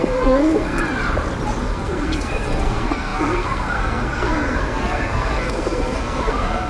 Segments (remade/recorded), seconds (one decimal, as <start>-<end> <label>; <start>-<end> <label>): 0.0-0.8 remade; 0.8-1.6 recorded; 1.6-6.7 remade